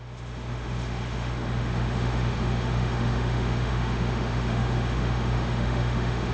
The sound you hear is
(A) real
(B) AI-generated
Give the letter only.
B